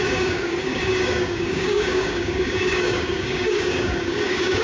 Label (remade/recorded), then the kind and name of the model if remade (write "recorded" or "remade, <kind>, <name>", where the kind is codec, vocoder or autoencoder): remade, codec, DAC